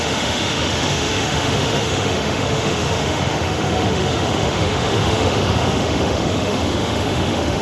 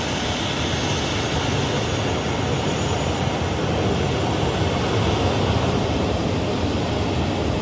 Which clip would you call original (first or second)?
second